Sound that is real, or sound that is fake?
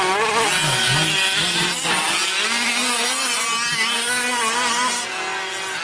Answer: real